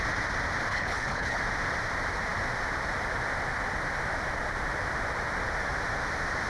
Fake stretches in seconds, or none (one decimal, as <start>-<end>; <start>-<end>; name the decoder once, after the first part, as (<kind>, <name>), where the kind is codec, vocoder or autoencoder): 0.7-1.4 (codec, HILCodec)